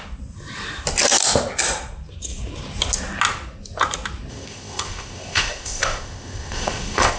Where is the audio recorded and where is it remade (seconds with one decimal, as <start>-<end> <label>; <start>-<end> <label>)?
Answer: 0.0-4.3 recorded; 4.3-7.2 remade